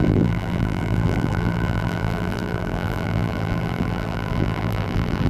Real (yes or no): no